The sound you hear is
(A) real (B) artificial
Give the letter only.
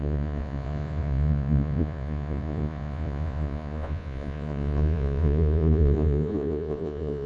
B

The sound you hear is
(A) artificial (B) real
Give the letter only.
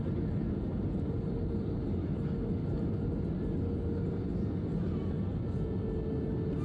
B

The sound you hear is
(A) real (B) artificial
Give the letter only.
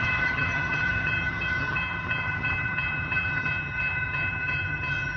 B